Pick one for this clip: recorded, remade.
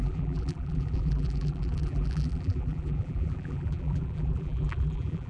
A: remade